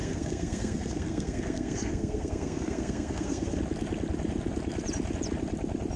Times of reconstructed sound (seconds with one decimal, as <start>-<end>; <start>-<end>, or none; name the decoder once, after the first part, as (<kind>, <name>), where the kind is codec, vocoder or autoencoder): 0.0-3.6 (codec, SNAC)